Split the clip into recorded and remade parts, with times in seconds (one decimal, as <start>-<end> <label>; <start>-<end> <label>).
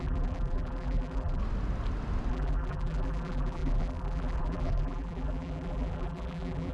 0.0-1.4 remade; 1.4-2.3 recorded; 2.3-6.7 remade